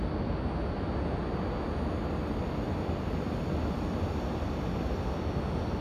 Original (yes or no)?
yes